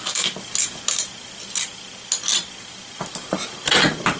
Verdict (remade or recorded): recorded